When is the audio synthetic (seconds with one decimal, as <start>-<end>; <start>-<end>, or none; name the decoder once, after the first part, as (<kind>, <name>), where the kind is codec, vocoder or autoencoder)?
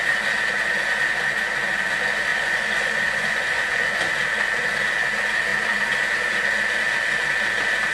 2.3-4.1 (vocoder, Vocos)